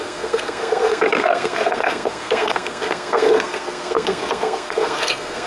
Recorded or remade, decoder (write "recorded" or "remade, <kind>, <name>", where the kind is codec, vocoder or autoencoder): remade, codec, SNAC